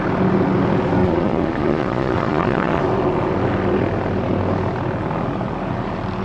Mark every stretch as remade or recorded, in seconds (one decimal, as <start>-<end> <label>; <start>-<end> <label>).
0.0-1.0 recorded; 1.0-2.8 remade; 2.8-6.2 recorded

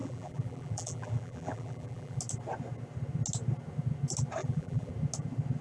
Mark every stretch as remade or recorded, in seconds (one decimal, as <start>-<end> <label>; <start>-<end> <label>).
0.0-2.2 remade; 2.2-4.4 recorded; 4.4-4.9 remade; 4.9-5.6 recorded

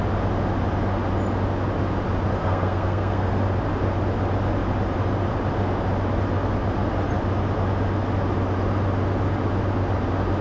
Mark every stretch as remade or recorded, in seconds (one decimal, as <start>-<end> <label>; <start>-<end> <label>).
0.0-2.4 recorded; 2.4-3.3 remade; 3.3-10.4 recorded

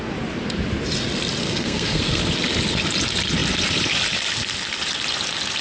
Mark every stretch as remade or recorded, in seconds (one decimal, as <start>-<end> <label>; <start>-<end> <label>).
0.0-1.4 recorded; 1.4-2.2 remade; 2.2-5.6 recorded